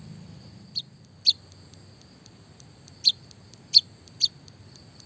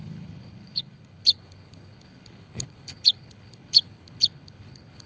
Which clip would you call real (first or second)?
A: first